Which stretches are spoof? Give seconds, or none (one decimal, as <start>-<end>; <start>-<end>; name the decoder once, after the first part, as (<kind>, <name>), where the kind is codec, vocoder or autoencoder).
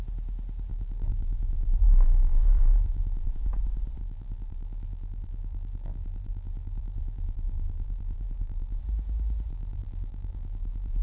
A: 0.7-3.3 (vocoder, BigVGAN v2); 4.0-8.8; 9.5-11.0